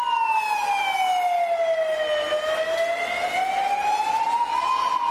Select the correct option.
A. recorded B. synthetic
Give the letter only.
A